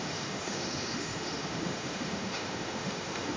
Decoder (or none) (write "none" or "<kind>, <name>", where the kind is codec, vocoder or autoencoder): autoencoder, DAC-VAE